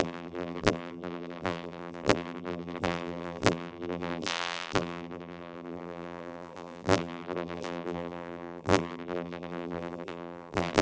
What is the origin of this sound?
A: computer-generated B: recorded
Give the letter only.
A